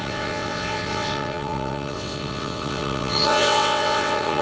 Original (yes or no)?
no